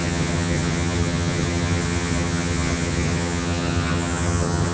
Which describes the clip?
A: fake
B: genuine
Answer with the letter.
A